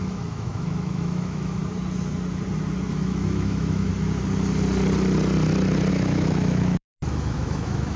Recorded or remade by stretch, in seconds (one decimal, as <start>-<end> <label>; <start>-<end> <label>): 0.0-1.6 remade; 1.6-2.9 recorded; 2.9-3.9 remade; 3.9-5.9 recorded; 5.9-8.0 remade